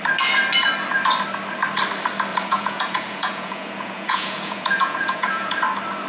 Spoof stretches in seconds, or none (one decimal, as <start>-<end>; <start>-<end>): 2.3-5.6